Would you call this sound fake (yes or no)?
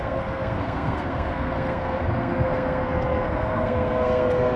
yes